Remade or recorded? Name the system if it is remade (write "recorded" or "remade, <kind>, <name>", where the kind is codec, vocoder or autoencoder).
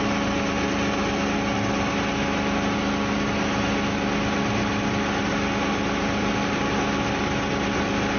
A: recorded